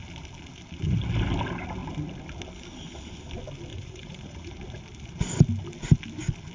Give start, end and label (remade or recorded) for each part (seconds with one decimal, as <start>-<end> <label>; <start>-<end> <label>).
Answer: 0.0-3.7 recorded; 3.7-4.8 remade; 4.8-6.5 recorded